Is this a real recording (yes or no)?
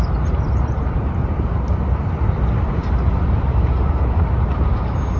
no